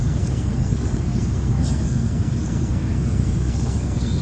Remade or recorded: remade